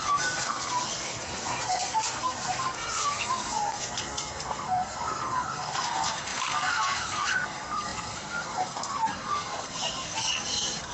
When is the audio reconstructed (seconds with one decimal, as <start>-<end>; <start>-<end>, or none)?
0.0-10.9